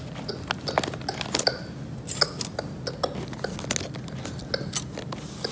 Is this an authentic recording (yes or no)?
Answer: yes